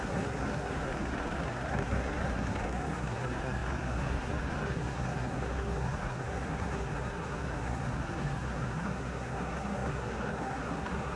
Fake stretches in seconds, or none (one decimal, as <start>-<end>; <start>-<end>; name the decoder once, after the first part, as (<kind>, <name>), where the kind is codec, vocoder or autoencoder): 0.0-11.2 (codec, SNAC)